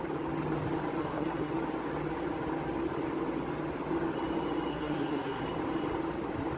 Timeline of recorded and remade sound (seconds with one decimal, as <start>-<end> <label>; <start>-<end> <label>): 0.0-1.0 recorded; 1.0-1.5 remade; 1.5-4.7 recorded; 4.7-5.4 remade; 5.4-6.6 recorded